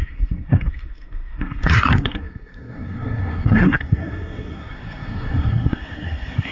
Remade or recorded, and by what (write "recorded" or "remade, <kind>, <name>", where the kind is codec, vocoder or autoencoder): remade, codec, SNAC